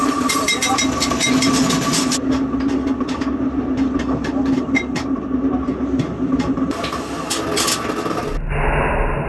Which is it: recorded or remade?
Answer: recorded